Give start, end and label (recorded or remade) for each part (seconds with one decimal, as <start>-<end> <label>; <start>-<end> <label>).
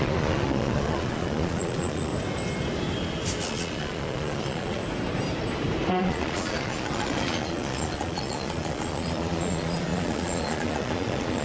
0.0-2.1 remade; 2.1-3.4 recorded; 3.4-4.8 remade; 4.8-6.0 recorded; 6.0-11.4 remade